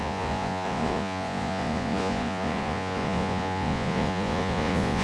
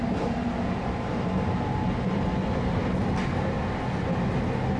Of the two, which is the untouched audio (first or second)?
second